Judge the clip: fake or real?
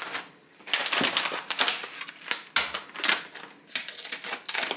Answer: real